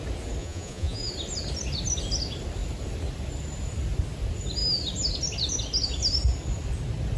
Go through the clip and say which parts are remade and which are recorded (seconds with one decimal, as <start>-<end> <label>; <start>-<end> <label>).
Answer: 0.0-0.4 recorded; 0.4-1.1 remade; 1.1-7.2 recorded